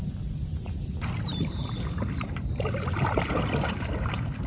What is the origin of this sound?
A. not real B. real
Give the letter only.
B